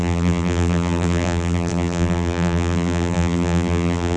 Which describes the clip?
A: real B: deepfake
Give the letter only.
B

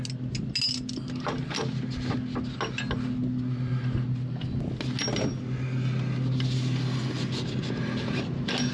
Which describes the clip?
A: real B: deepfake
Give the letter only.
A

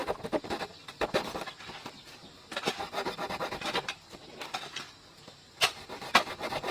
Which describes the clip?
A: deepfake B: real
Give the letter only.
B